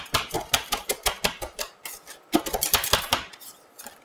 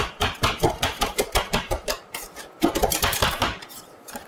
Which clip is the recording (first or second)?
first